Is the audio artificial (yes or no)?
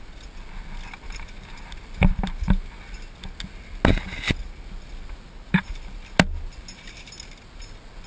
no